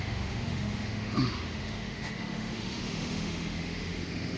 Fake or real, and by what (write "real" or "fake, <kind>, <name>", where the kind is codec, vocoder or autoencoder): fake, autoencoder, DAC-VAE